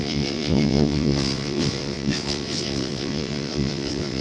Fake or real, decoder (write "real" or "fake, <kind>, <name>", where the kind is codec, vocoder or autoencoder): fake, vocoder, WaveNeXt